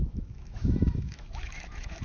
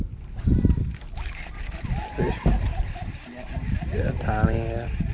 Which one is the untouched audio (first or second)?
second